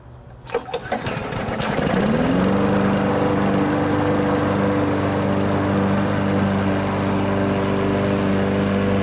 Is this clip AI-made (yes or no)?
no